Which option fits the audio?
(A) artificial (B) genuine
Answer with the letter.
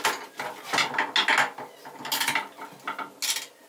B